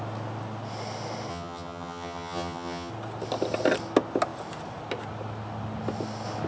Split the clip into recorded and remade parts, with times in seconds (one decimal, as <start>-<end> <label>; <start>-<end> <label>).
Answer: 0.0-1.3 recorded; 1.3-2.9 remade; 2.9-6.5 recorded